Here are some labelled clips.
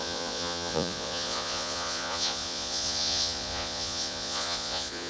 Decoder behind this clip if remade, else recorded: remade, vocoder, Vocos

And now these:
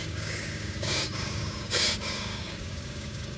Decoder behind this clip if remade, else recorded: remade, codec, DAC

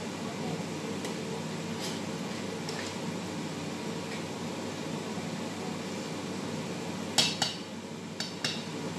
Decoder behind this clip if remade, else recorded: recorded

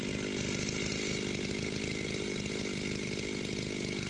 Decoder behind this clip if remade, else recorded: recorded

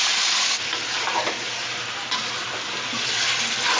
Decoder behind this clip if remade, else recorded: recorded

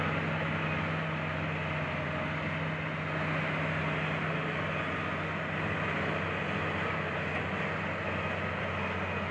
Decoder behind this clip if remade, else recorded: recorded